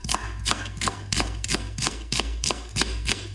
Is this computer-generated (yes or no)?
yes